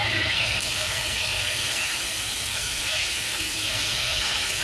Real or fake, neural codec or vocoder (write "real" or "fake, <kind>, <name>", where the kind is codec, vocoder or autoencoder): fake, codec, SNAC